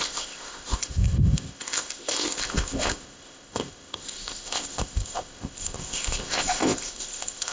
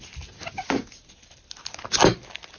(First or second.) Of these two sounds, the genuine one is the second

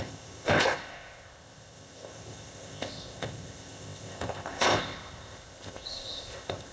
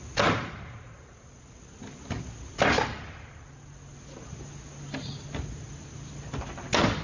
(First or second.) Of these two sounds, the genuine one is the second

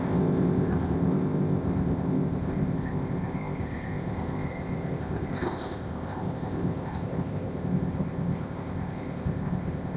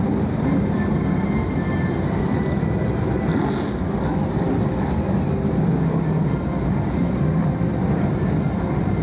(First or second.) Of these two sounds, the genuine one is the second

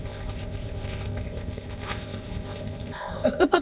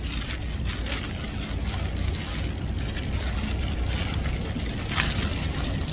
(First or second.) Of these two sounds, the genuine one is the second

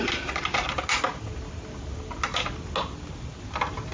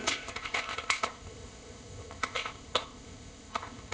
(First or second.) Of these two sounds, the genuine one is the first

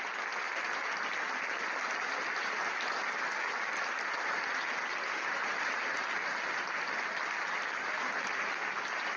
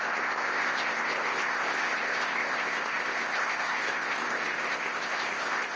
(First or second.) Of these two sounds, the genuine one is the first